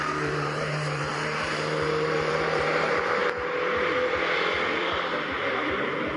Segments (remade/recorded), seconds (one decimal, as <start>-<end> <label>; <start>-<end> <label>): 0.0-3.2 remade; 3.2-5.8 recorded; 5.8-6.2 remade